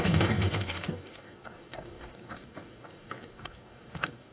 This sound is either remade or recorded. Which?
remade